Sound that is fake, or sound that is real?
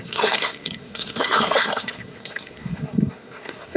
fake